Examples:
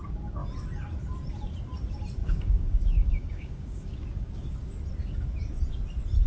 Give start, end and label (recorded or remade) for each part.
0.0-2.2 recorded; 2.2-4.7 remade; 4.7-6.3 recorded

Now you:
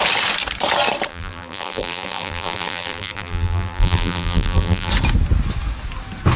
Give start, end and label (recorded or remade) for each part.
0.0-1.1 recorded; 1.1-4.9 remade; 4.9-6.4 recorded

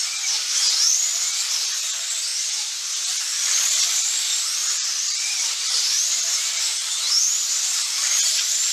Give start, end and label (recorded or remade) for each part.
0.0-2.3 recorded; 2.3-2.9 remade; 2.9-3.3 recorded; 3.3-4.1 remade; 4.1-4.6 recorded; 4.6-7.3 remade; 7.3-7.7 recorded; 7.7-8.7 remade

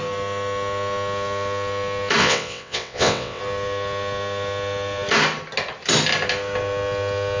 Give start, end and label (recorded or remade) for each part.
0.0-2.2 recorded; 2.2-3.4 remade; 3.4-7.4 recorded

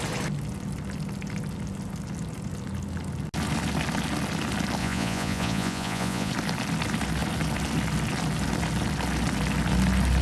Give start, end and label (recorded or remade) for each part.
0.0-4.8 recorded; 4.8-6.3 remade; 6.3-10.2 recorded

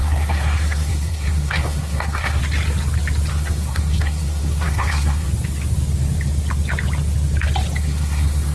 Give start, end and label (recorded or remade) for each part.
0.0-2.4 remade; 2.4-3.3 recorded; 3.3-5.3 remade; 5.3-7.8 recorded; 7.8-8.5 remade

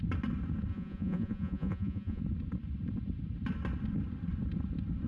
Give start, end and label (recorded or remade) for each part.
0.0-0.7 recorded; 0.7-2.2 remade; 2.2-5.1 recorded

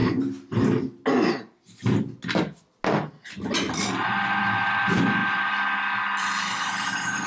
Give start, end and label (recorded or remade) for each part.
0.0-4.4 recorded; 4.4-5.2 remade; 5.2-6.2 recorded; 6.2-7.3 remade